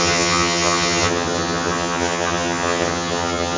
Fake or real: fake